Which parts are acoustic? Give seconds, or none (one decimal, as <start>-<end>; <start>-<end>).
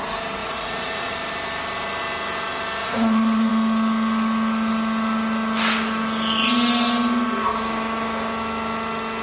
0.0-0.4; 1.1-2.8; 3.5-9.2